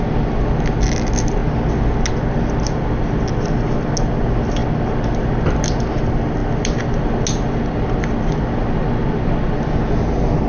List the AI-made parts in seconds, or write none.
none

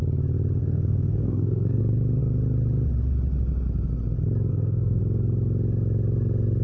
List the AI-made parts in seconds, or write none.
0.6-1.8 (codec, SNAC); 4.5-5.0